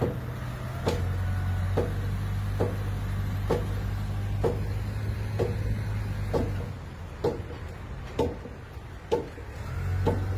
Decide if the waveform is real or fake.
real